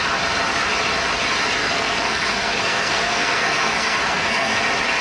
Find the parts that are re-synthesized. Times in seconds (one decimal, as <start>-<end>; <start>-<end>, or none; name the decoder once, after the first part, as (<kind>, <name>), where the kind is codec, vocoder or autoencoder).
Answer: 1.6-4.6 (codec, SNAC)